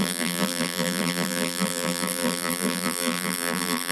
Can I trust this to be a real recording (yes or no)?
no